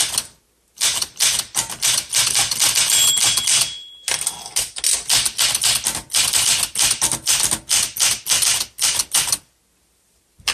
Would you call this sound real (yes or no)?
yes